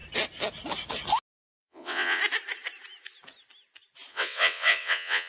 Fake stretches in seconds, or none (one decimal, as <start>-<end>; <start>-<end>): 1.6-2.2; 4.1-5.3

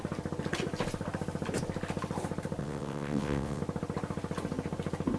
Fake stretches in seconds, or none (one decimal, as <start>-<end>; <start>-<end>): 2.6-3.6

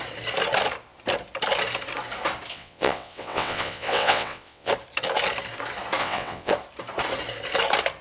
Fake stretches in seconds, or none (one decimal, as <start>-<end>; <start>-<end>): 2.5-4.7; 6.0-6.5

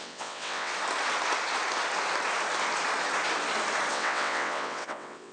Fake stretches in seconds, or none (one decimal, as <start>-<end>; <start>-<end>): 0.0-0.7; 3.9-5.3